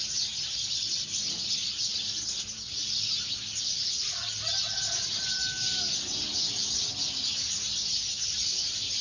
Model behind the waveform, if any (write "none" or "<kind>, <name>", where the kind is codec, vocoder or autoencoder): none